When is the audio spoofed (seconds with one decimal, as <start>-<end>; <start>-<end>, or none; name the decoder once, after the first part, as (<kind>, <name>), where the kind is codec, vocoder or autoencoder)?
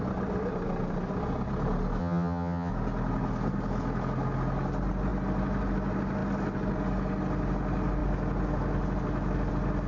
2.0-2.7 (vocoder, HiFi-GAN)